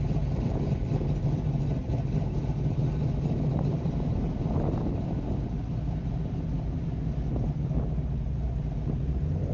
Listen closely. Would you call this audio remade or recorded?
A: recorded